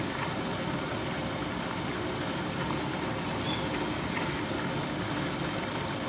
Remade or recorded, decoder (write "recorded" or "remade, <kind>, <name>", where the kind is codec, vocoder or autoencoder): recorded